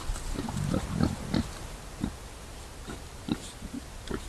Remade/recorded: recorded